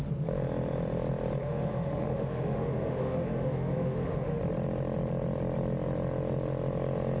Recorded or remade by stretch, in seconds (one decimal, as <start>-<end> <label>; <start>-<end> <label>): 0.0-1.4 recorded; 1.4-4.4 remade; 4.4-7.2 recorded